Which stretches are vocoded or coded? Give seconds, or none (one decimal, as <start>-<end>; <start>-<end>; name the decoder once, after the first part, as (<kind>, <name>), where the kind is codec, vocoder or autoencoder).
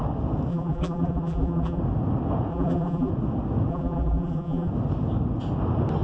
0.5-1.8 (vocoder, BigVGAN v2); 2.5-3.1; 3.7-4.7